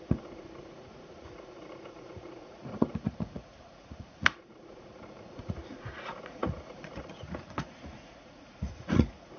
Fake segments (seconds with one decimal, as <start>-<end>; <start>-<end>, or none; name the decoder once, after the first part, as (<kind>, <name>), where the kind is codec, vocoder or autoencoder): 0.0-9.4 (vocoder, Vocos)